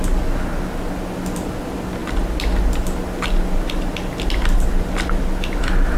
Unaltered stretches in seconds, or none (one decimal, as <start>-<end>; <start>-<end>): 0.0-6.0